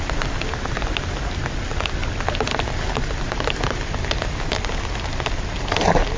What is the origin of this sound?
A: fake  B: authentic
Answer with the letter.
B